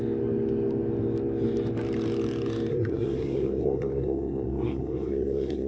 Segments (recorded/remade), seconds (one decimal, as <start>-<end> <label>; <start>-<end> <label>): 0.0-2.7 recorded; 2.7-5.7 remade